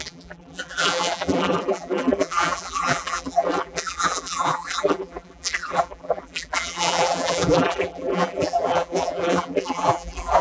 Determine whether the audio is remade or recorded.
remade